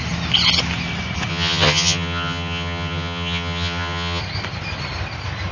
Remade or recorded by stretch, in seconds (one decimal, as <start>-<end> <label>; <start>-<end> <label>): 0.0-1.3 recorded; 1.3-4.2 remade; 4.2-5.5 recorded